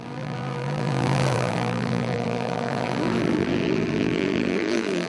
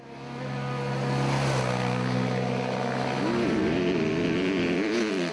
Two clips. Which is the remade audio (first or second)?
first